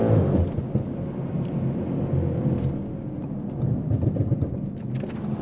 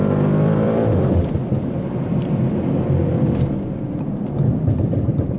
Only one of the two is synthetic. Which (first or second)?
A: second